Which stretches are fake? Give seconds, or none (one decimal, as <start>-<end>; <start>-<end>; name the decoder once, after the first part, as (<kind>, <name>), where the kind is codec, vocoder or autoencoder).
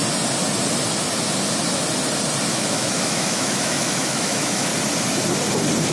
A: 2.5-4.7 (autoencoder, DAC-VAE)